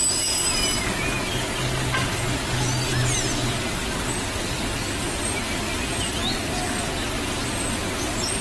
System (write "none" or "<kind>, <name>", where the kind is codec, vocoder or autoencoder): none